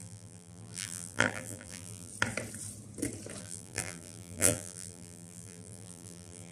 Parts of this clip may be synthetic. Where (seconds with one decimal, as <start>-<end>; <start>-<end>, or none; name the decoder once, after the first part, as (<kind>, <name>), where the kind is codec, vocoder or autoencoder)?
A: 0.0-2.1 (vocoder, BigVGAN v2); 3.4-6.5